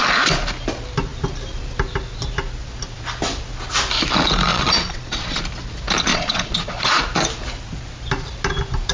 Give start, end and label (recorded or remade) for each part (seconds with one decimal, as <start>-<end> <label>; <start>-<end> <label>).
0.0-4.5 recorded; 4.5-5.4 remade; 5.4-6.1 recorded; 6.1-7.0 remade; 7.0-8.9 recorded